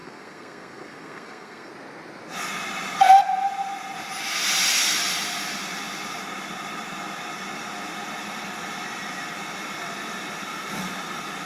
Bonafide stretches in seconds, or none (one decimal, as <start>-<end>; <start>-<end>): 1.7-11.5